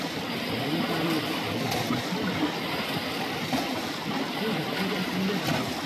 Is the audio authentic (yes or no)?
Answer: yes